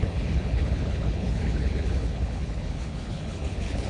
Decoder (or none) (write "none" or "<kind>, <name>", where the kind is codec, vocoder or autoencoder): codec, HILCodec